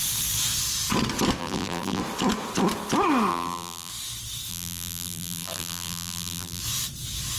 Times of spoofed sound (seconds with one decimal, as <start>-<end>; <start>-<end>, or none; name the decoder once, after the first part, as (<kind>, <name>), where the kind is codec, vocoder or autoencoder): 1.4-2.0 (vocoder, BigVGAN v2); 3.3-3.9; 4.5-6.6